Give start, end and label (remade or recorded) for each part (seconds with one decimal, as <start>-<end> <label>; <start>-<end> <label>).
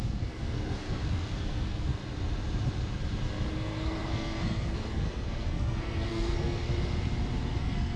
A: 0.0-2.0 remade; 2.0-3.5 recorded; 3.5-6.7 remade; 6.7-7.6 recorded; 7.6-8.0 remade